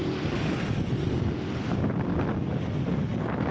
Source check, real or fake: real